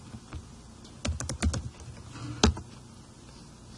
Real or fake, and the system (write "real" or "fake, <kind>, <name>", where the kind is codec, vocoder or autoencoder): real